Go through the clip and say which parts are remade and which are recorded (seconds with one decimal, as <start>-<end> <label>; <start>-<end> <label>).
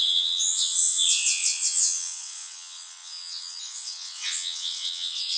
0.0-5.4 remade